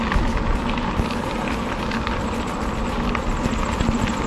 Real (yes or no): yes